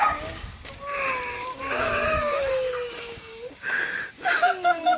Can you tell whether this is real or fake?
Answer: fake